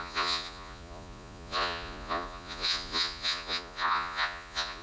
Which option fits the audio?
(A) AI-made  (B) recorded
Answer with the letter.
A